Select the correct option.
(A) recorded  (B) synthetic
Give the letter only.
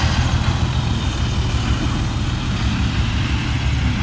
A